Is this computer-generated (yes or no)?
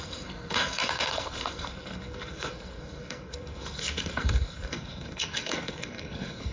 yes